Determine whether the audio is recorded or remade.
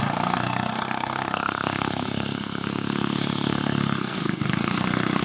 remade